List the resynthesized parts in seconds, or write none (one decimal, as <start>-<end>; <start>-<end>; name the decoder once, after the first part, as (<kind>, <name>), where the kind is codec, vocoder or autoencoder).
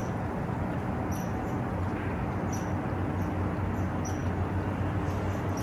none